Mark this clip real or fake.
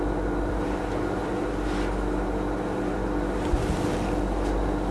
real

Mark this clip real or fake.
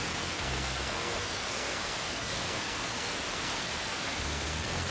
fake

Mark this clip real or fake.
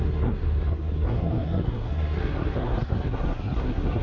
fake